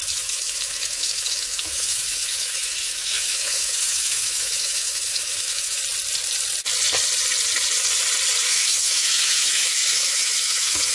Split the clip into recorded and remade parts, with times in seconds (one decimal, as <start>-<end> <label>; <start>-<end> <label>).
0.0-5.8 remade; 5.8-8.5 recorded; 8.5-10.9 remade